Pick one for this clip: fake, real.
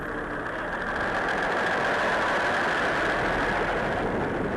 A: real